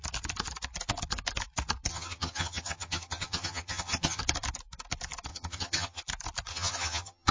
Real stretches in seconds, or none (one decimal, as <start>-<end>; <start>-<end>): 0.0-1.9; 4.2-5.3; 6.0-6.5